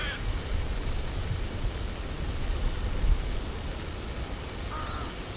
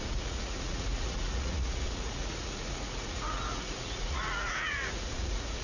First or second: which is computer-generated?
second